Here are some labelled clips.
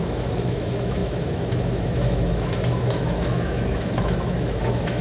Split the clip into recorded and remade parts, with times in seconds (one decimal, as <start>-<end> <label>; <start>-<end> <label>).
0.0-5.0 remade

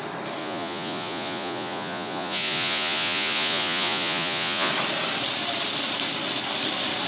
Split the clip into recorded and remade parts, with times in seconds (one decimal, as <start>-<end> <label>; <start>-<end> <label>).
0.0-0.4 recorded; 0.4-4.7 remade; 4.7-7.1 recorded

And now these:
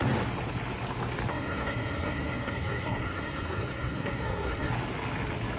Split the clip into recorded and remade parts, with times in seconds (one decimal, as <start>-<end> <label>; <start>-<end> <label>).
0.0-1.3 recorded; 1.3-4.7 remade; 4.7-5.6 recorded

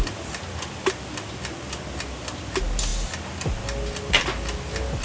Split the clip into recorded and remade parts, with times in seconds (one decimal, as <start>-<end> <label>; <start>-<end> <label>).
0.0-5.0 recorded